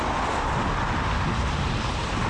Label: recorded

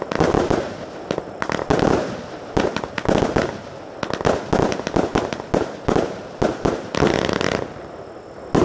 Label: recorded